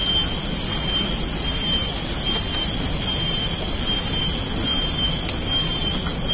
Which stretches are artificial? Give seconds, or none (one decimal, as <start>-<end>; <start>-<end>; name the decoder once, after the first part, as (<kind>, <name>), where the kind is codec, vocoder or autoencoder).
none